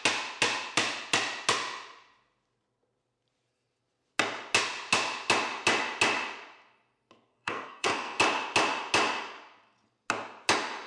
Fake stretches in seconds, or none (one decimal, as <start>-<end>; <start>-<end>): 7.3-8.2